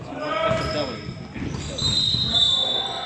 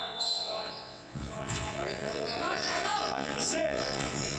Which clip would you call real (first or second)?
first